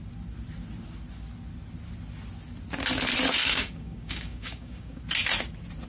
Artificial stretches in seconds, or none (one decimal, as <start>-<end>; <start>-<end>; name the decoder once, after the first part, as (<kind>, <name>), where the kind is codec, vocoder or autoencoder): 3.4-5.0 (codec, DAC)